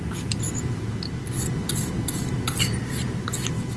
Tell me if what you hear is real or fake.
real